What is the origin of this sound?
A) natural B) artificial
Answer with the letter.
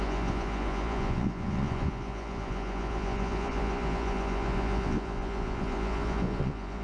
B